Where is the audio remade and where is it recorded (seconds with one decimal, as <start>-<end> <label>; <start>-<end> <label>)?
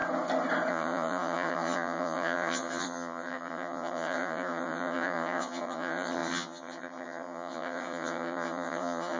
0.0-0.7 recorded; 0.7-9.2 remade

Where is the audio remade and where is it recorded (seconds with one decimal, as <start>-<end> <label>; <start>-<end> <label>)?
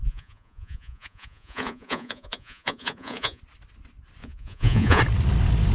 0.0-3.4 remade; 3.4-4.2 recorded; 4.2-5.0 remade; 5.0-5.7 recorded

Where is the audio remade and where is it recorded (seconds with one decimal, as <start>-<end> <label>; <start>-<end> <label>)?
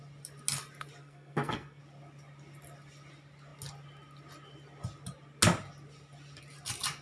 0.0-1.0 recorded; 1.0-1.8 remade; 1.8-7.0 recorded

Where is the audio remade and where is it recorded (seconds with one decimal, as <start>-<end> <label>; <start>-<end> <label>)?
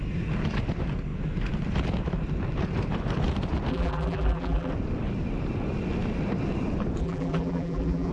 0.0-3.7 recorded; 3.7-4.7 remade; 4.7-7.0 recorded; 7.0-8.1 remade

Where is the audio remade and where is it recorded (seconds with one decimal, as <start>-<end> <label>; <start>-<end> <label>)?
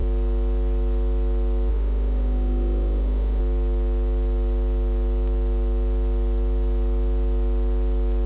0.0-1.7 recorded; 1.7-3.4 remade; 3.4-8.3 recorded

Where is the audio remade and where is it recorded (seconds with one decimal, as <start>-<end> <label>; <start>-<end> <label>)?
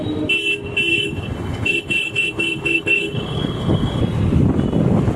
0.0-0.9 recorded; 0.9-4.0 remade; 4.0-5.2 recorded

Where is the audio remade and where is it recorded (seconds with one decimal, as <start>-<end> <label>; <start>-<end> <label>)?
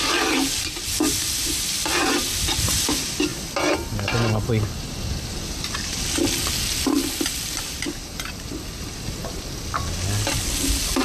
0.0-11.0 recorded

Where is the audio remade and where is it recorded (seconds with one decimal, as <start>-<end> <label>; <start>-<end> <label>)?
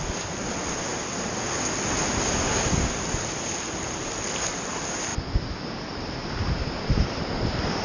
0.0-7.8 recorded